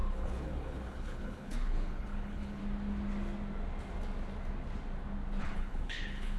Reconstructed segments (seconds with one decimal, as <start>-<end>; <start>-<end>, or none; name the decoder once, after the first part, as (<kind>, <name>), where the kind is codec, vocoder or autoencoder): 0.0-2.6 (codec, HILCodec); 5.4-6.4